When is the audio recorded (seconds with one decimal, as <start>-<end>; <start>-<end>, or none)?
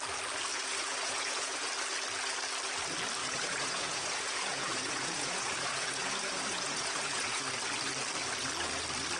0.0-0.5; 1.7-3.2; 7.4-9.2